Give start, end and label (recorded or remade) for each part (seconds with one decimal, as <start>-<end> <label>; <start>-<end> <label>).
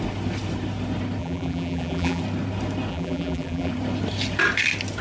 0.0-1.2 recorded; 1.2-2.2 remade; 2.2-2.9 recorded; 2.9-3.7 remade; 3.7-5.0 recorded